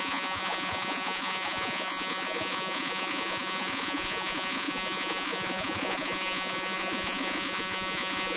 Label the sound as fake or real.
fake